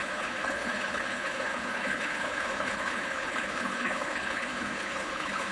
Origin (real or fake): fake